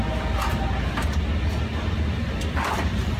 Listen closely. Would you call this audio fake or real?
real